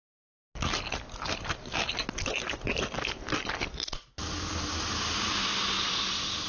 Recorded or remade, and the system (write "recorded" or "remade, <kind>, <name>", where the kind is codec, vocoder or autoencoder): recorded